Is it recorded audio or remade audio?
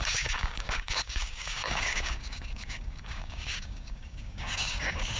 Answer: remade